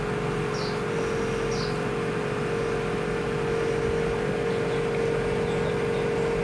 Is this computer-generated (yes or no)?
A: no